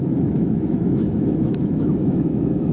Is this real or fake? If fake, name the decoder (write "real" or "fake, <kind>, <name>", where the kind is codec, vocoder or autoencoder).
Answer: fake, autoencoder, DAC-VAE